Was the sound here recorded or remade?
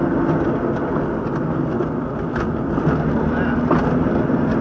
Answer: recorded